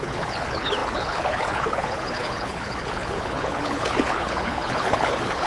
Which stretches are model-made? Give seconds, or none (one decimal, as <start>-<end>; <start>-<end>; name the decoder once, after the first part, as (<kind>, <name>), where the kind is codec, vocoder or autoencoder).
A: 0.0-5.5 (codec, HILCodec)